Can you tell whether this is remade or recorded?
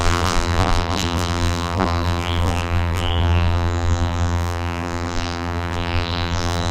remade